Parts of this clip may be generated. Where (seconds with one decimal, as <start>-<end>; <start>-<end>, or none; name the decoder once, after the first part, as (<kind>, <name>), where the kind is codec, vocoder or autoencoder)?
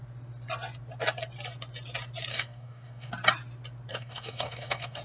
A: 2.3-3.1 (codec, DAC); 3.9-5.0